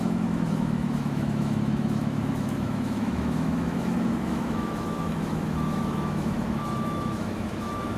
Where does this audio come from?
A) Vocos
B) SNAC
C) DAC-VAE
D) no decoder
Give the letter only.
C